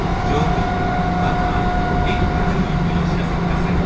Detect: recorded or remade recorded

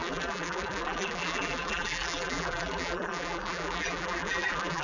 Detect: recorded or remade remade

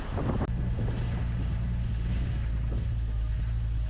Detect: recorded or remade recorded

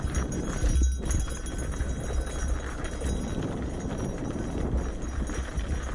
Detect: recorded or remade recorded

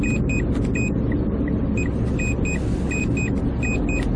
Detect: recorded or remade recorded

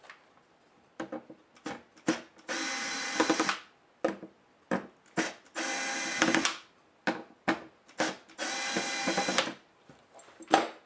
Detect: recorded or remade recorded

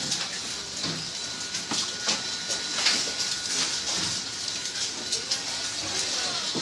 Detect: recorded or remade recorded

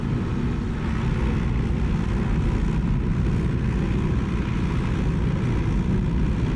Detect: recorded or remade recorded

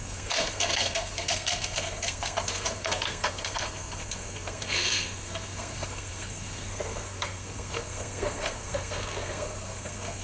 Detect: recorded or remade remade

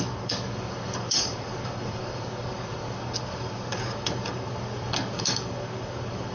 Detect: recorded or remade remade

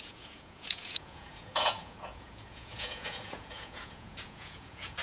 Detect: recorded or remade remade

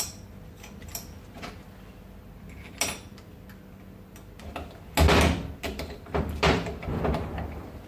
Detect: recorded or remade recorded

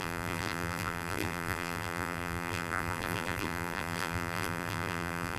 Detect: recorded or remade remade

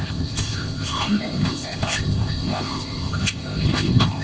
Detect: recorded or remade remade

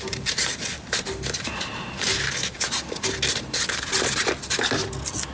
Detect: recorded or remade recorded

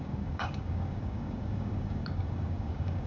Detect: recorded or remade remade